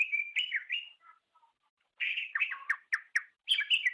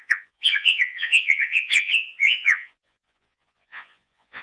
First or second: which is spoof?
second